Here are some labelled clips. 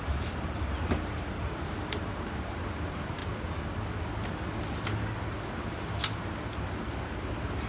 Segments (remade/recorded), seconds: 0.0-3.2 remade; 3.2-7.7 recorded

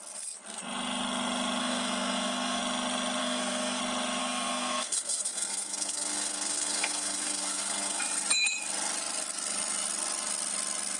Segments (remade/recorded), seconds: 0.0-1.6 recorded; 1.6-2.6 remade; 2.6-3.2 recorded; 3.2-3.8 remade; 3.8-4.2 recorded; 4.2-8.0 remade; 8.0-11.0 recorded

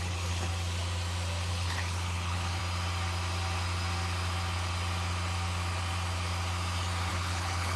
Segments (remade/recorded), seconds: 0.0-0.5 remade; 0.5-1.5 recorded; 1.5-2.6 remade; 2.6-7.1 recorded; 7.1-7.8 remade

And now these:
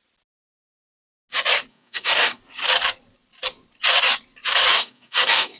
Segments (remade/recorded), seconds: 0.0-1.7 recorded; 1.7-2.4 remade; 2.4-4.7 recorded; 4.7-5.6 remade